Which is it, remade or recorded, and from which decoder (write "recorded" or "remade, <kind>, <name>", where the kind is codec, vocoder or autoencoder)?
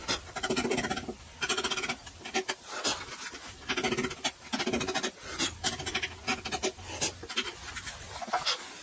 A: recorded